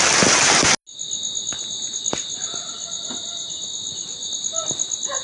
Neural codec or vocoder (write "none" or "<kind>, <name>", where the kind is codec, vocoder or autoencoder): none